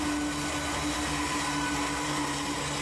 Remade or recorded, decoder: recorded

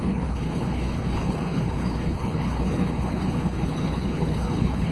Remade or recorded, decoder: remade, codec, HILCodec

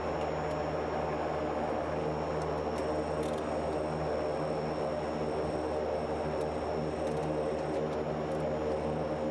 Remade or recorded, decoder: recorded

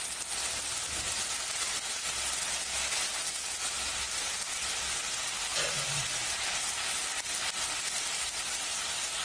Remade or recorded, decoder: recorded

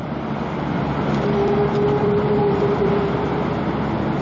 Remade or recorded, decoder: recorded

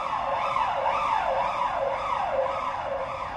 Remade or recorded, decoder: recorded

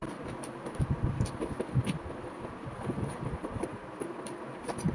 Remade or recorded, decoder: recorded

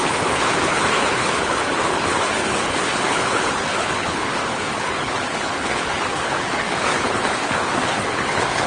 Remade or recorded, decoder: remade, codec, HILCodec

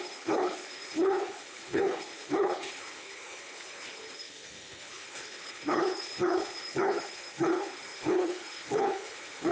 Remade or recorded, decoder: remade, codec, HILCodec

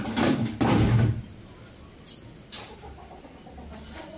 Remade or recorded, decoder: recorded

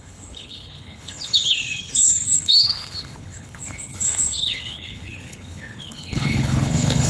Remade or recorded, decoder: remade, codec, HILCodec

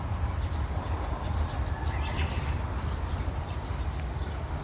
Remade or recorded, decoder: recorded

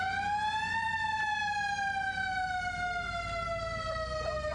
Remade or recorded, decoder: recorded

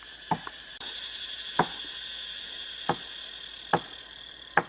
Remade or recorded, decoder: recorded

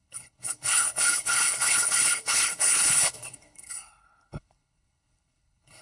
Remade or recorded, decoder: remade, codec, HILCodec